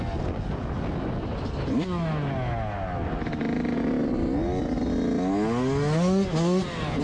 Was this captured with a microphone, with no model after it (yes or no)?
yes